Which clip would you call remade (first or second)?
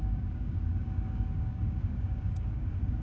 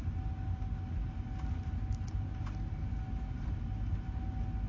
first